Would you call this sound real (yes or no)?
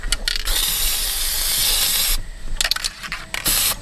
yes